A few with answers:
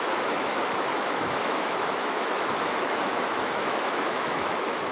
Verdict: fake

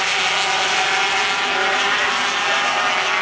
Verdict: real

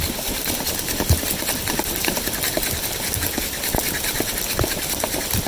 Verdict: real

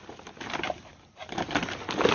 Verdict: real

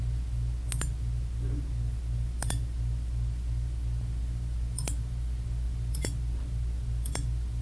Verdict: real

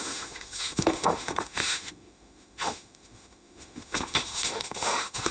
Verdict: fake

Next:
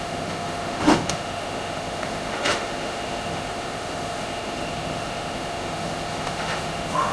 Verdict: fake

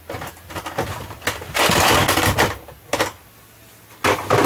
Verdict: real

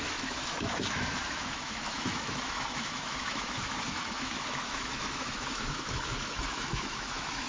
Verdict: fake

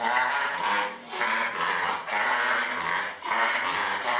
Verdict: real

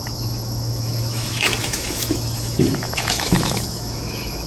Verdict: fake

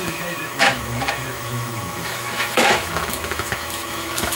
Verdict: fake